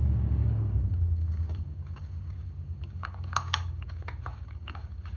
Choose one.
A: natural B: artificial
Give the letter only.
B